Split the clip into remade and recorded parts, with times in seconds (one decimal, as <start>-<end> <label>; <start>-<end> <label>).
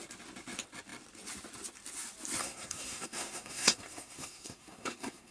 0.0-2.4 recorded; 2.4-5.3 remade